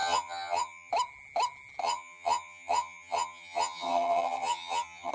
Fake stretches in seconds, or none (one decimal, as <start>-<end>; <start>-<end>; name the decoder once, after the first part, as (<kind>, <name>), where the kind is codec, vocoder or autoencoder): 0.0-0.9 (vocoder, HiFi-GAN); 1.8-5.1